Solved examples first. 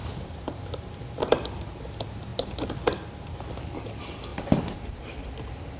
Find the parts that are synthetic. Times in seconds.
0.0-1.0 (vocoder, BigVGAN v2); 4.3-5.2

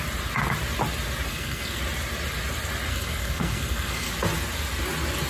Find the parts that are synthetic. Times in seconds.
1.3-1.8 (codec, SNAC); 2.9-4.1

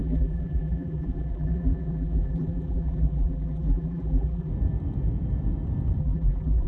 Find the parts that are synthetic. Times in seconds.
0.0-4.5 (vocoder, BigVGAN v2); 6.0-6.7